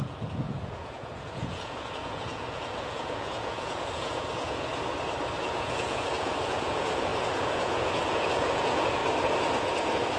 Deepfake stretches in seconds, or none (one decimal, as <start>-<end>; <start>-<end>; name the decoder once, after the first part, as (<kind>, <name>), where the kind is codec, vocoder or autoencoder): 0.0-4.7 (vocoder, Vocos); 5.4-9.0; 9.6-10.2